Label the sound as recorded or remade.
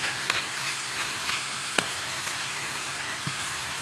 remade